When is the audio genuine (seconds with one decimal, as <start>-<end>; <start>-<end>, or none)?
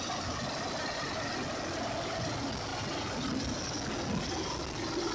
0.0-2.7; 3.6-5.1